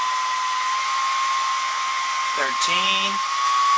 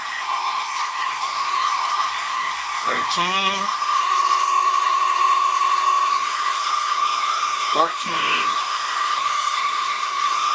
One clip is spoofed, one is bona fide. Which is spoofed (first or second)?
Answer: second